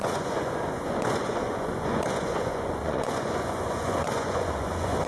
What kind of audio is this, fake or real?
fake